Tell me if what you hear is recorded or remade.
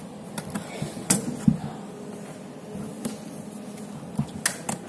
recorded